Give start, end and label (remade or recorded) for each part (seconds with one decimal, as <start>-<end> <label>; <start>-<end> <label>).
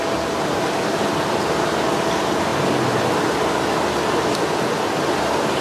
0.0-5.6 recorded